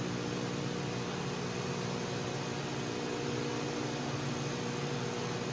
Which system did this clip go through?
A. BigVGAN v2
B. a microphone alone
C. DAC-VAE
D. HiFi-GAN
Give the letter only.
B